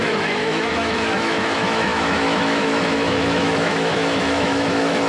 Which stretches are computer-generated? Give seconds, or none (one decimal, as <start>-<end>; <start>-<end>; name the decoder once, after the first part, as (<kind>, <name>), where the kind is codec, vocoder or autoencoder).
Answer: 0.0-5.1 (autoencoder, DAC-VAE)